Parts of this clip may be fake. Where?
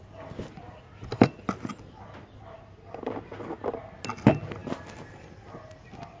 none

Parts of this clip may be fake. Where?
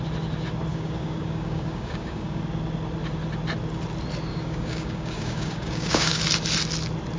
0.7-2.4 (codec, DAC); 4.3-6.2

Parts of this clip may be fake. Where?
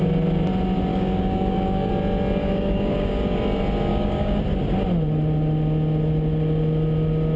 0.9-1.9 (codec, DAC); 2.4-3.4; 3.9-4.4